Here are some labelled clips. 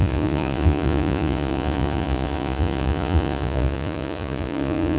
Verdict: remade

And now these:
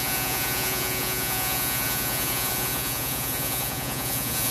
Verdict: remade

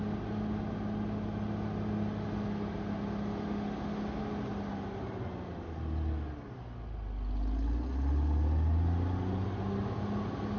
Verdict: recorded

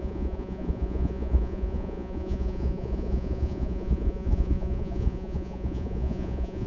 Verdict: remade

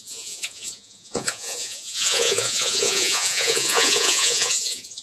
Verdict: remade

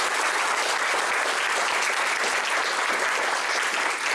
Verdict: recorded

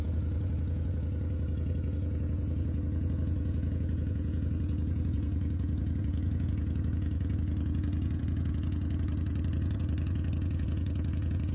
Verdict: remade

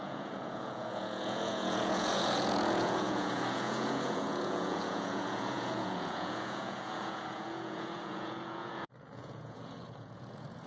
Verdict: remade